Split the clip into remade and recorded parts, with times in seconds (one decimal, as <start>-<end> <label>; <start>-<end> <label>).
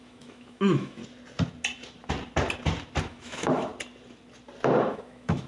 0.0-1.0 remade; 1.0-3.0 recorded; 3.0-3.7 remade; 3.7-4.9 recorded; 4.9-5.5 remade